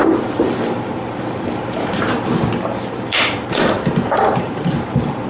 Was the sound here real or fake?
fake